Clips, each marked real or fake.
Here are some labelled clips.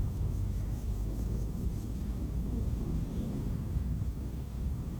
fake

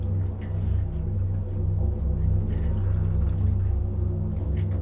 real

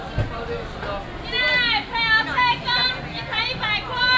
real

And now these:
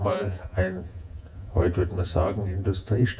fake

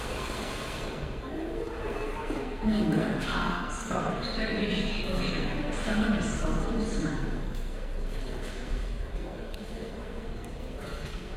fake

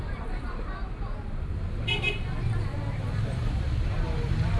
fake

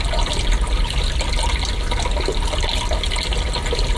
real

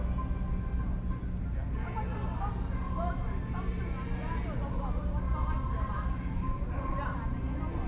real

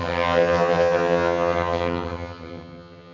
fake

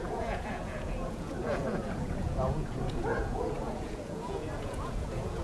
fake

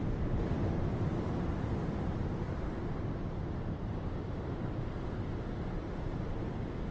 real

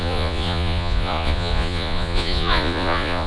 fake